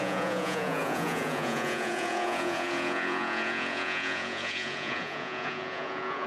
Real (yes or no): no